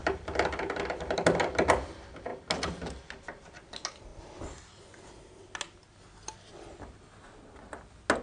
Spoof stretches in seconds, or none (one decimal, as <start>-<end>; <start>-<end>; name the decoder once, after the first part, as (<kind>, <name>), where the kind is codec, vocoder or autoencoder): none